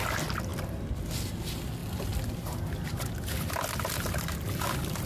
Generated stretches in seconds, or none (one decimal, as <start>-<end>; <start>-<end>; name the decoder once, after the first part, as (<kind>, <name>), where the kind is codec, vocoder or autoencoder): none